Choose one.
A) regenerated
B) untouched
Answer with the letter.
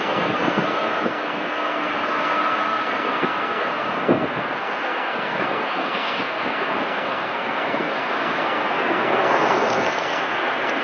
A